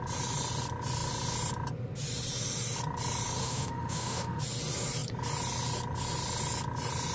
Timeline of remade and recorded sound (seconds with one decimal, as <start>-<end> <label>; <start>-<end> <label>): 0.0-3.4 recorded; 3.4-4.4 remade; 4.4-7.1 recorded